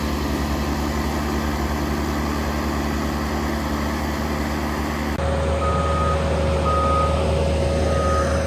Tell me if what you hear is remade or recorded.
recorded